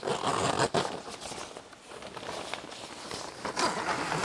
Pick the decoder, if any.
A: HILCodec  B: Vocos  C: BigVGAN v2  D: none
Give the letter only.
D